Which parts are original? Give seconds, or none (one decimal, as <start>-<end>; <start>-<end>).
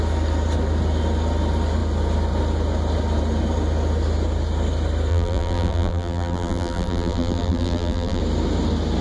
0.0-5.1; 8.2-9.0